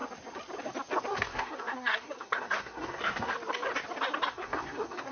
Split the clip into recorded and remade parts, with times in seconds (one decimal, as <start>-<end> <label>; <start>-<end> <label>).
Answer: 0.0-1.1 recorded; 1.1-3.3 remade; 3.3-4.3 recorded; 4.3-5.1 remade